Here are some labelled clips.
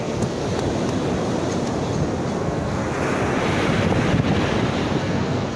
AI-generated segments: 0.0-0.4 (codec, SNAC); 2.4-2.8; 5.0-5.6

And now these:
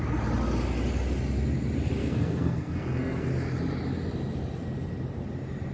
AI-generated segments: 2.0-3.3 (codec, SNAC)